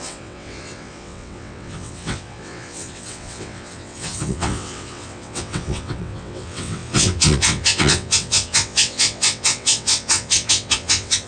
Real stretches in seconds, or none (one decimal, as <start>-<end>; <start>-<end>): none